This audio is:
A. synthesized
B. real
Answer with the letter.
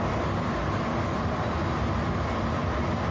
B